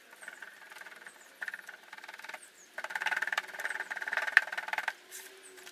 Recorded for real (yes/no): yes